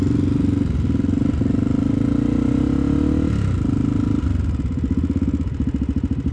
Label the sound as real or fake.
real